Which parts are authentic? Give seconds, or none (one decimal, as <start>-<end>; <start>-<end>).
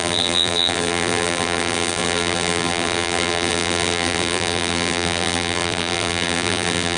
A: none